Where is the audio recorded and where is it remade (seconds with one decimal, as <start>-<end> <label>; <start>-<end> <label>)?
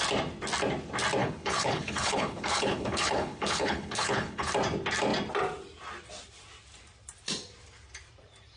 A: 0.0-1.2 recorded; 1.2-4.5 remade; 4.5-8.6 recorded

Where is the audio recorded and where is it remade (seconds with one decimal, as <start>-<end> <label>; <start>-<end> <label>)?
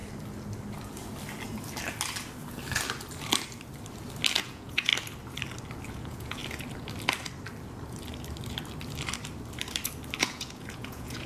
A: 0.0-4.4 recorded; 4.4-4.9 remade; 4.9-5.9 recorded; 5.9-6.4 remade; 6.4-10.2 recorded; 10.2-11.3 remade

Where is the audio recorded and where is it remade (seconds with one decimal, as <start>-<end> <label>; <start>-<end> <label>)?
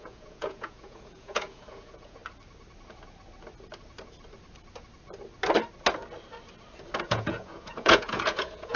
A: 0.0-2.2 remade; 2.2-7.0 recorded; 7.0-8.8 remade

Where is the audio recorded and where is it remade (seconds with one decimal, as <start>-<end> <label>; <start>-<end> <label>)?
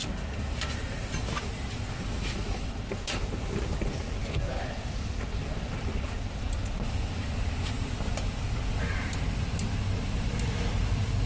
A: 0.0-11.3 recorded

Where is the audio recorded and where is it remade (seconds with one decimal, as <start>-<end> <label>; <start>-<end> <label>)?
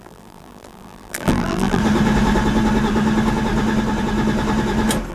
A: 0.0-1.8 remade; 1.8-5.1 recorded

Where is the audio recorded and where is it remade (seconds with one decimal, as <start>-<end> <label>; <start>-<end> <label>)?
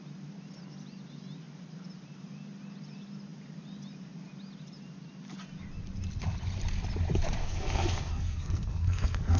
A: 0.0-7.4 recorded; 7.4-9.4 remade